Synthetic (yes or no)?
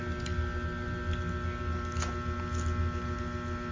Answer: no